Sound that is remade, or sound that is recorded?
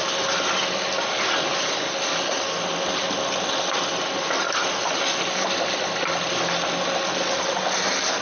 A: recorded